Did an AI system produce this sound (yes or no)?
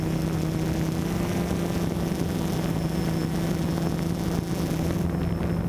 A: no